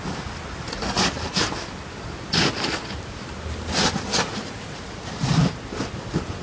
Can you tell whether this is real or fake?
real